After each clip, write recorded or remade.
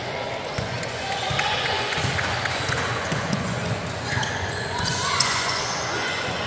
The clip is remade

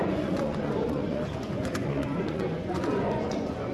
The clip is remade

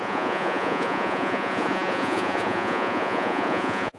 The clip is remade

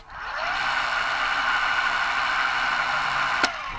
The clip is recorded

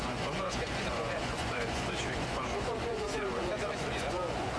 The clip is remade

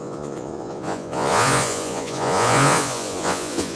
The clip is remade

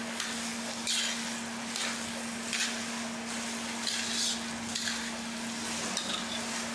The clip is recorded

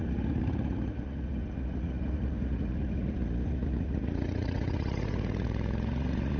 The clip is remade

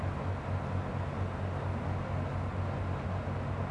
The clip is recorded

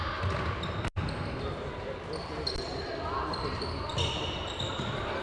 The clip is recorded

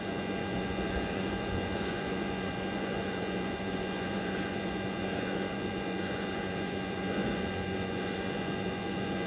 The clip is remade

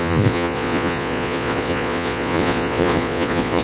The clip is remade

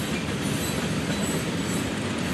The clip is recorded